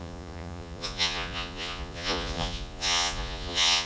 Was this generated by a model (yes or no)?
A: yes